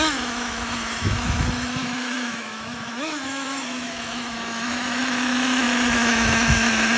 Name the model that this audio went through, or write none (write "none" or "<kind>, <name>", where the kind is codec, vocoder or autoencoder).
autoencoder, DAC-VAE